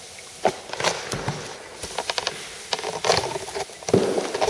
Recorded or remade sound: recorded